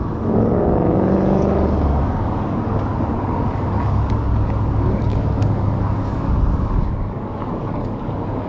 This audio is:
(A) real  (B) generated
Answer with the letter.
B